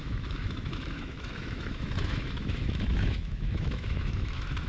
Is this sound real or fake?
fake